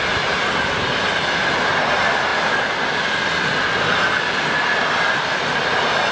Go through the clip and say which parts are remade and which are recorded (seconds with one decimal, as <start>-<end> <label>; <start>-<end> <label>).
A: 0.0-2.3 recorded; 2.3-3.0 remade; 3.0-6.1 recorded